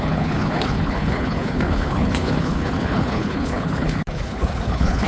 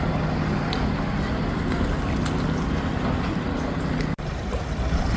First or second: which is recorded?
second